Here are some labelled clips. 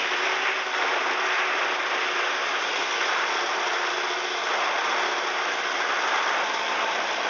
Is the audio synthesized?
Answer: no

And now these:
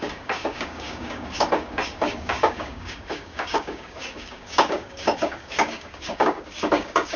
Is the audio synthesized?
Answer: yes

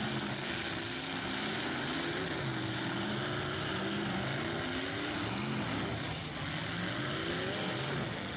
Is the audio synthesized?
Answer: no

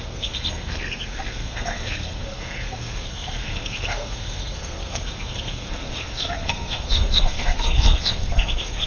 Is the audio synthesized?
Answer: yes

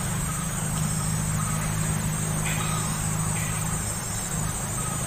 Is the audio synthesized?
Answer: no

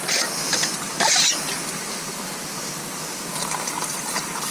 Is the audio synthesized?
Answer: no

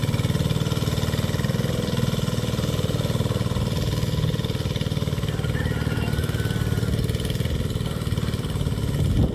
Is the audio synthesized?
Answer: no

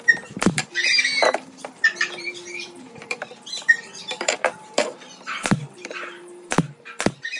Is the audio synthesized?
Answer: yes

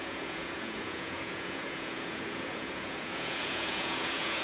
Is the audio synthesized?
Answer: yes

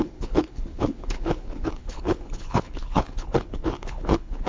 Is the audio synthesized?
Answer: yes